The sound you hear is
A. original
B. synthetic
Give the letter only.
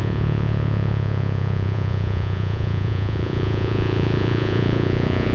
B